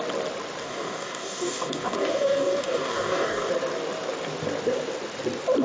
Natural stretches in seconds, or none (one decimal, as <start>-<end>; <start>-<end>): 0.0-0.6; 3.5-5.6